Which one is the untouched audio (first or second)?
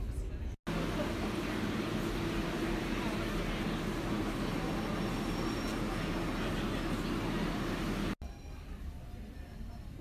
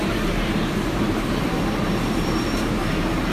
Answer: first